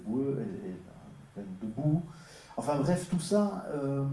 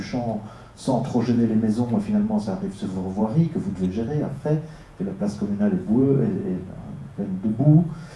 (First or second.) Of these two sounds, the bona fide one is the first